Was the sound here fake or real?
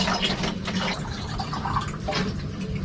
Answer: real